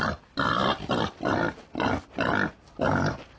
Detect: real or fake real